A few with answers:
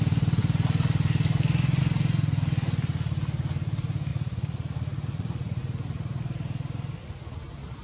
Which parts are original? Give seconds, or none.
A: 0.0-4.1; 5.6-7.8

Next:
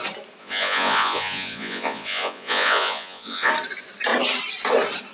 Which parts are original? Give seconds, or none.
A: 0.0-0.4; 3.5-5.1

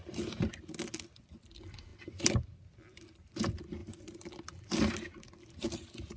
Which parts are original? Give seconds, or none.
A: 0.0-6.2

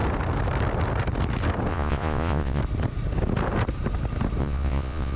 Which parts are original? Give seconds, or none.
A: 0.0-1.7; 2.6-4.4